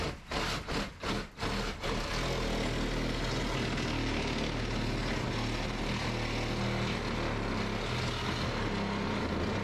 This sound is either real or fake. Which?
real